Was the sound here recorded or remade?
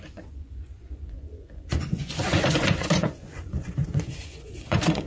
remade